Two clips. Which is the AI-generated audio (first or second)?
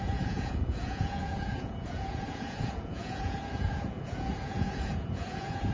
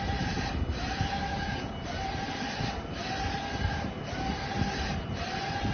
first